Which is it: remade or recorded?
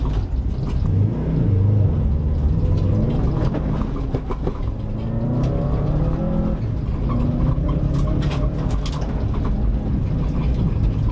recorded